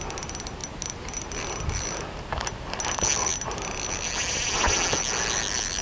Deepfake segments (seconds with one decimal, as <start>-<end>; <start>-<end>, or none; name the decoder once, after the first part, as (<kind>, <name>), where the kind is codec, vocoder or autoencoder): none